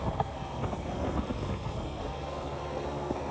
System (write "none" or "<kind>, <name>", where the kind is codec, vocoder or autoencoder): codec, SNAC